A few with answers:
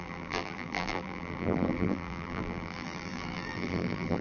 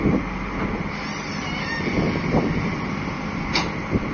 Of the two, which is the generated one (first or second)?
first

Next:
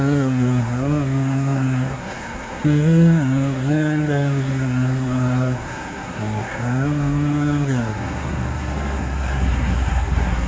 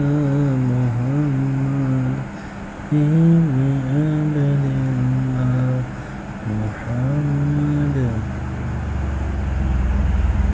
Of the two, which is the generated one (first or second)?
first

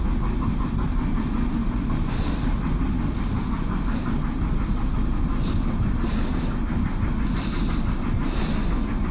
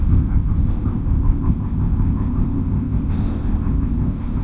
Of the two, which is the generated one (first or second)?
second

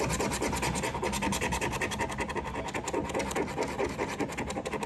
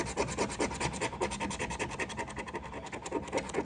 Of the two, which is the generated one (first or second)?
second